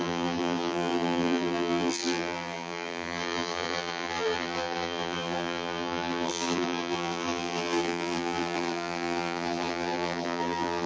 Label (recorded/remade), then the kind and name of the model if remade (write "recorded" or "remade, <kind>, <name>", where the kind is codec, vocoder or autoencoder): remade, vocoder, BigVGAN v2